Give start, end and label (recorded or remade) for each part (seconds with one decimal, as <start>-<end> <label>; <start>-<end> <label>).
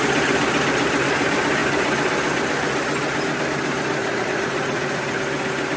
0.0-4.0 recorded; 4.0-5.2 remade; 5.2-5.8 recorded